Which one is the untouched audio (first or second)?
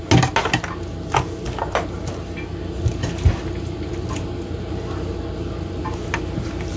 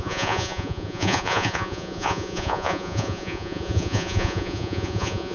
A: first